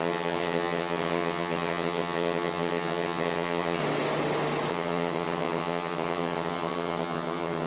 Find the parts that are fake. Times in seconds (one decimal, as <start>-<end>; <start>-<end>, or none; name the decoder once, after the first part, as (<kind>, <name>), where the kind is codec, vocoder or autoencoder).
0.0-3.8 (vocoder, HiFi-GAN); 4.7-7.7